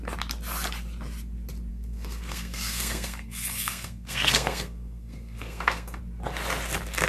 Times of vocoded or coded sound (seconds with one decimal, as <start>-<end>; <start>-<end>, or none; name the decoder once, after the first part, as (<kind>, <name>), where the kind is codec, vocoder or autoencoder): 1.7-6.0 (codec, SNAC)